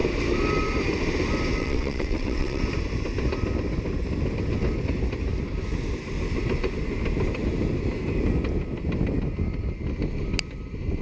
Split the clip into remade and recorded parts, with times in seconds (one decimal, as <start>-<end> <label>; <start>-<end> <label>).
0.0-1.6 recorded; 1.6-2.6 remade; 2.6-11.0 recorded